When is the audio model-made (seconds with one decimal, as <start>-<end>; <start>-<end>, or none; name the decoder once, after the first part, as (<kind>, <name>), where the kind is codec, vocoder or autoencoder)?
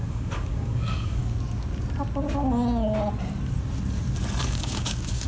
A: 0.0-1.2 (codec, DAC); 4.4-5.3